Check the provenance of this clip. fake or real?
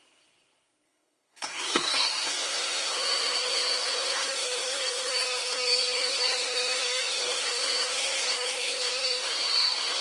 fake